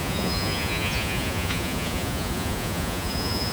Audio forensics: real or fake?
fake